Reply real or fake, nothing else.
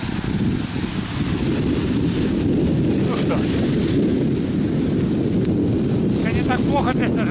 real